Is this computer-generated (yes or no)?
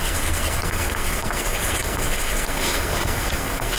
yes